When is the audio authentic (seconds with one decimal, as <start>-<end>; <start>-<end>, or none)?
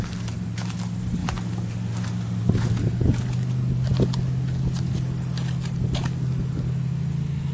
0.0-7.5